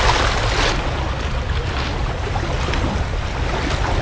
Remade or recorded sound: recorded